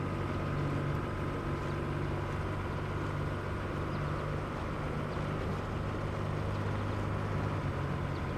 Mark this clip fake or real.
real